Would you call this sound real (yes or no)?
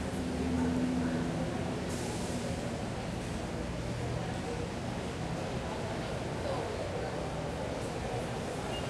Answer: yes